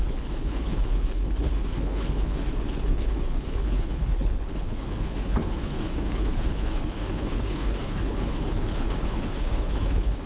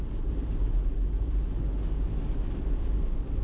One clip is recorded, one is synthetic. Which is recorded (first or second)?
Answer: second